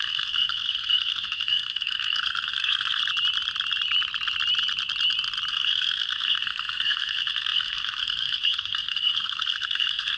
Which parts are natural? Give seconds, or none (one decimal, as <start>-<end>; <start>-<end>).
3.0-5.5